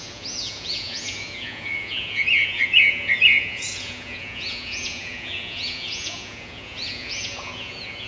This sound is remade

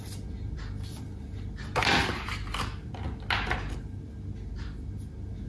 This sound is recorded